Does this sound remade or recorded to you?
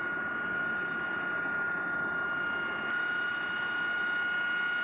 recorded